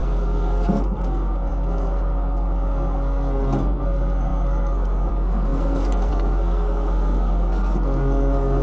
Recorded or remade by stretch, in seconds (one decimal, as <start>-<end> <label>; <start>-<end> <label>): 0.0-8.6 remade